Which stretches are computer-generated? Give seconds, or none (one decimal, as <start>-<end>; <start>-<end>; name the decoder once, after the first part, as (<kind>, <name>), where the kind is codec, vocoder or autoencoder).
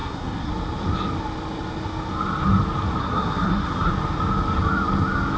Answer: 0.0-0.5 (codec, SNAC); 3.0-3.9